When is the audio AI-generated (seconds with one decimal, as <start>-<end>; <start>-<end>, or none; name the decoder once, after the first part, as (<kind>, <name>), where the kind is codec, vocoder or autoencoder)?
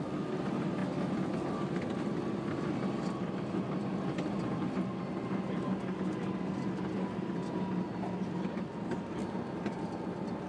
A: none